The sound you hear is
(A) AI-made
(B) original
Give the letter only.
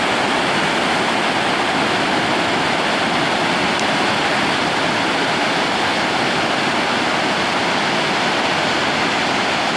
B